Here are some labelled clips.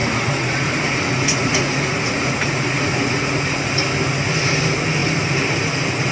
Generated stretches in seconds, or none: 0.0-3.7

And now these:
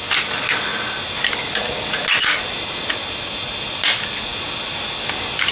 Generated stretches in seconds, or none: none

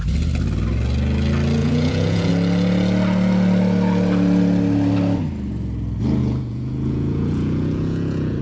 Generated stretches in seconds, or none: 1.6-2.3; 6.2-8.4

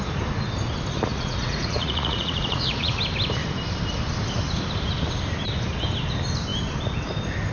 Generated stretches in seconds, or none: 1.1-3.0

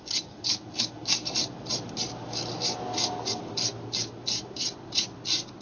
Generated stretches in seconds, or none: none

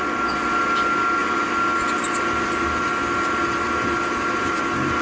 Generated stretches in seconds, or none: none

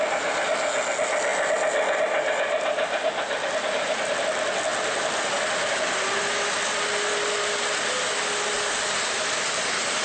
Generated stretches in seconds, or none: none

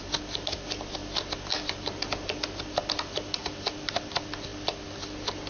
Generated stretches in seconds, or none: none